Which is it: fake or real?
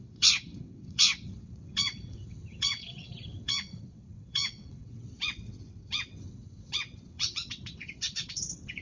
fake